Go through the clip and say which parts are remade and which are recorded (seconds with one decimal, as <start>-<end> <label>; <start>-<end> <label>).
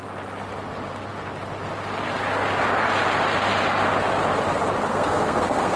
0.0-4.9 recorded; 4.9-5.8 remade